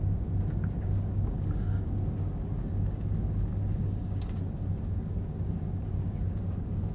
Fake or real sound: fake